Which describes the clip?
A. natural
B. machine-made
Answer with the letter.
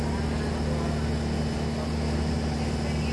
A